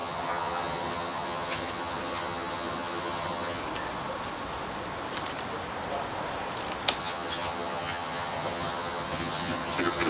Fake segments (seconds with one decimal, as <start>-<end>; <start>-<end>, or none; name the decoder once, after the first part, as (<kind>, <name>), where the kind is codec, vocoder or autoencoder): 0.0-3.6 (vocoder, HiFi-GAN); 7.0-10.1